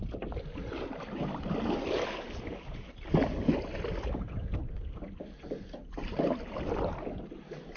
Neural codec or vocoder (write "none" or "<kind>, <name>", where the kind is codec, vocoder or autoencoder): none